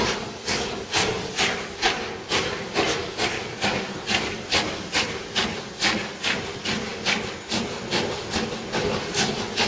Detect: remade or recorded recorded